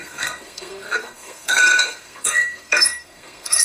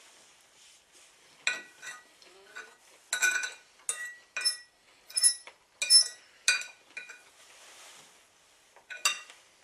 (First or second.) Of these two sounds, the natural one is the second